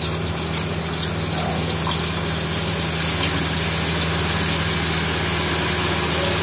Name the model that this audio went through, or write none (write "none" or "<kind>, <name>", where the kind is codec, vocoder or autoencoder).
none